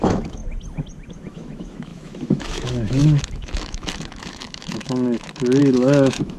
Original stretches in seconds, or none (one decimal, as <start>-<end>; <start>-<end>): 0.4-1.1